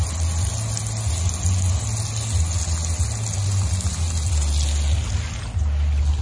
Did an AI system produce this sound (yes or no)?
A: no